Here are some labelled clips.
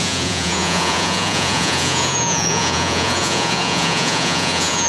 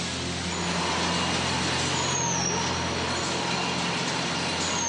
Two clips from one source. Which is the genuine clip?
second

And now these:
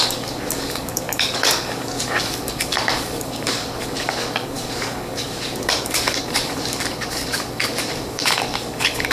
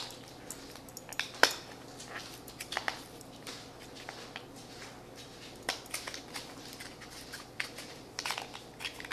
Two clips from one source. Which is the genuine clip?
second